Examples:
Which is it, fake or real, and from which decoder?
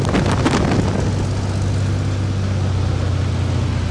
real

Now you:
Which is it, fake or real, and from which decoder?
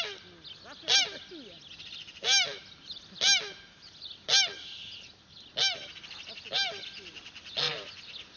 real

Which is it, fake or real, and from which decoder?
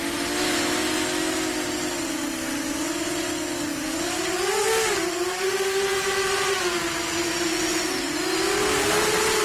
real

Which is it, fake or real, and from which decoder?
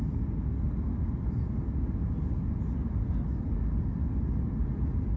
real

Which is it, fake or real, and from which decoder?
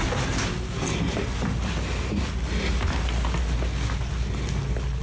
real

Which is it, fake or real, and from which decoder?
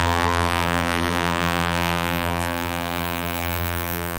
fake, vocoder, BigVGAN v2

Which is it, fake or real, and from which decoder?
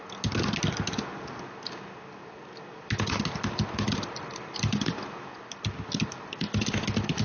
real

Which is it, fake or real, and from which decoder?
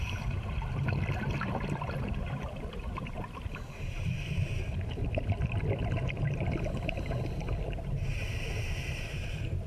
fake, vocoder, BigVGAN v2